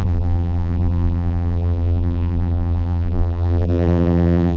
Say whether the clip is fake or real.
fake